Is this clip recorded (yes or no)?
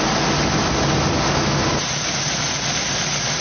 yes